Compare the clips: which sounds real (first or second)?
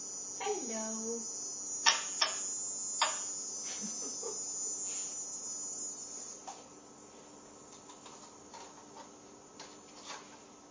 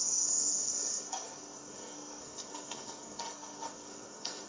first